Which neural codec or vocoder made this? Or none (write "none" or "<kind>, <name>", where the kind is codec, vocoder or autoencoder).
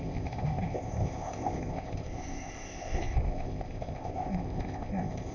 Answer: codec, ZipCodec